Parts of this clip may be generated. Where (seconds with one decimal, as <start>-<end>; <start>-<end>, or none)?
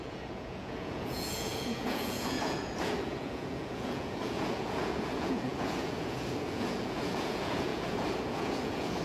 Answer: 0.0-9.0